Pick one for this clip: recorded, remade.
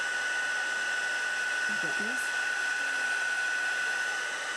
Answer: recorded